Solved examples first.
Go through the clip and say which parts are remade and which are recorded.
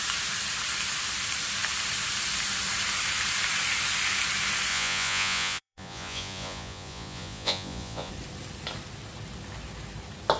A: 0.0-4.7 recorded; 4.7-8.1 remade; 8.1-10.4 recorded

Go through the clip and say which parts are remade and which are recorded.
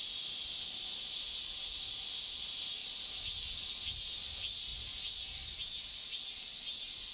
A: 0.0-2.8 remade; 2.8-4.0 recorded; 4.0-7.1 remade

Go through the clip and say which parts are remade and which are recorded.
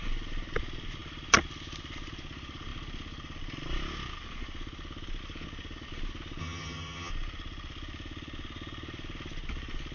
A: 0.0-6.4 recorded; 6.4-7.1 remade; 7.1-9.9 recorded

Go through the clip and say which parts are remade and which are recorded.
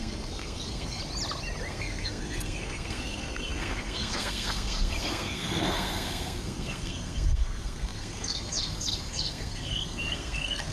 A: 0.0-1.0 remade; 1.0-1.7 recorded; 1.7-10.7 remade